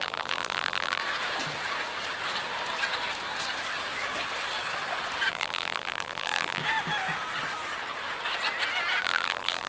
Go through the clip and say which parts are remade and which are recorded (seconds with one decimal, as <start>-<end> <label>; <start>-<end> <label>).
0.0-1.0 remade; 1.0-5.3 recorded; 5.3-6.6 remade; 6.6-9.0 recorded; 9.0-9.7 remade